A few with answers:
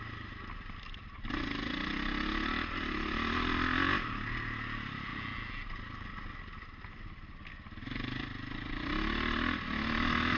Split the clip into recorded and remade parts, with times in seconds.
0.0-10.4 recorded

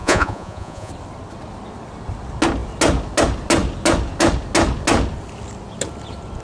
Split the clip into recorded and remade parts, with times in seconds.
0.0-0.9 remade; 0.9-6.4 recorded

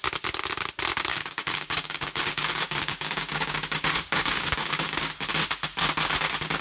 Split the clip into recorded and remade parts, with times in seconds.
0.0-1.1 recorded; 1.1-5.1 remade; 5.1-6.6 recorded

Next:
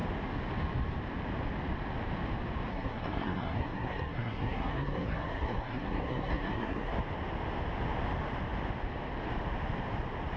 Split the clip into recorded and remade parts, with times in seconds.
0.0-2.7 recorded; 2.7-6.9 remade; 6.9-10.4 recorded